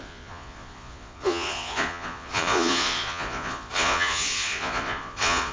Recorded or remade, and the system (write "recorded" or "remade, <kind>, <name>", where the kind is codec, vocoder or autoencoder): remade, vocoder, Vocos